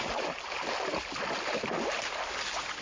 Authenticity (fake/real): real